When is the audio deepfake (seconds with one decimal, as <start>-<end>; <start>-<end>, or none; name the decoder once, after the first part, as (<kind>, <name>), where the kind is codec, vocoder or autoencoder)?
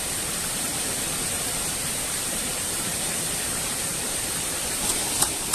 0.0-5.5 (vocoder, BigVGAN v2)